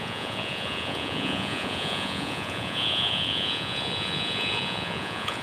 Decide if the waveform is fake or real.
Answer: fake